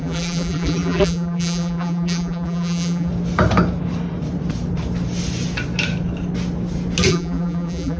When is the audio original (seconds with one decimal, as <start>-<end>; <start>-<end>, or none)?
3.1-7.1